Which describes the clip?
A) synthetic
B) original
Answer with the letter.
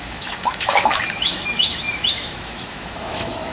A